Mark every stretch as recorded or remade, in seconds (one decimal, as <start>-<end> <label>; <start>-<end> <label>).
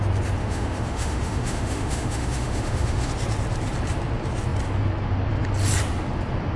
0.0-0.4 recorded; 0.4-3.1 remade; 3.1-6.6 recorded